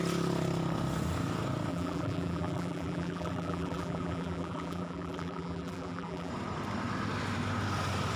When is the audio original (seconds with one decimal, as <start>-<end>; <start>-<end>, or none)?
0.0-1.7; 6.3-8.2